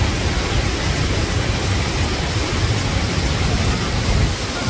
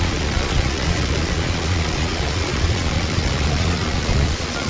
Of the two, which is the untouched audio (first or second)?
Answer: first